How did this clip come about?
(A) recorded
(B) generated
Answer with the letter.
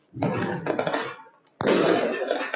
A